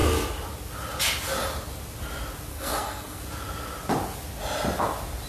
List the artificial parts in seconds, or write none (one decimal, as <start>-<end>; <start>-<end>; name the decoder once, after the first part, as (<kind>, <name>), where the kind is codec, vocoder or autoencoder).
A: 2.5-3.2 (codec, SNAC)